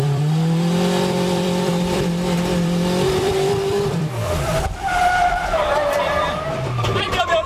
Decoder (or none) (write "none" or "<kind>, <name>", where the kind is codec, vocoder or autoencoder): vocoder, BigVGAN v2